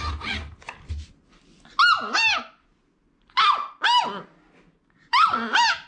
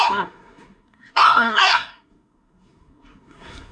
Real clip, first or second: first